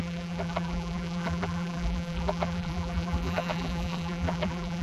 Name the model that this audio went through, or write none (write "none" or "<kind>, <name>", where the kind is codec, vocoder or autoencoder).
vocoder, BigVGAN v2